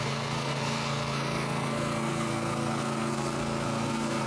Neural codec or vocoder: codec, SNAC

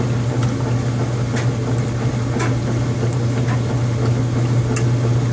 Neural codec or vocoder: none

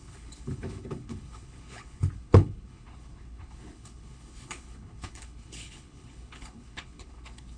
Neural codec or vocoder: codec, HILCodec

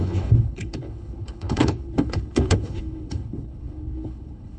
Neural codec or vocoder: codec, HILCodec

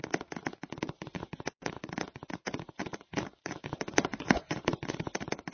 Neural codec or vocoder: vocoder, Vocos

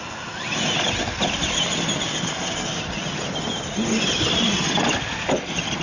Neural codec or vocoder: none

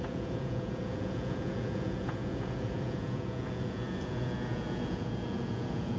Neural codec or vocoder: vocoder, Vocos